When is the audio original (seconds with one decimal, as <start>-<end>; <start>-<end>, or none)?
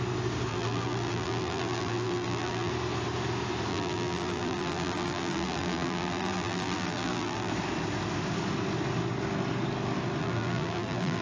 0.0-0.5; 2.7-3.7; 7.5-10.2